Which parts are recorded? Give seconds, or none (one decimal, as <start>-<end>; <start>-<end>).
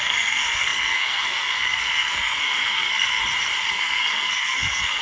3.2-3.7